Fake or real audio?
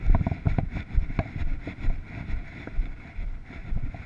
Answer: real